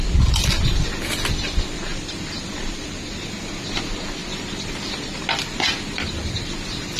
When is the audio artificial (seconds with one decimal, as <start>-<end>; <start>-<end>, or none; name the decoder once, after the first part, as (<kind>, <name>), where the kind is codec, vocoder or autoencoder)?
1.9-3.3 (vocoder, BigVGAN v2); 4.2-5.2